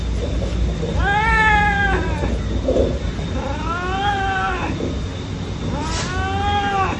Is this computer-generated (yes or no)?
no